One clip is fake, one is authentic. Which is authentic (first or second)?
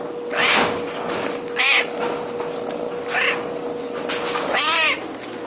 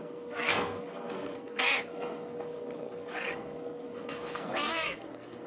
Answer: first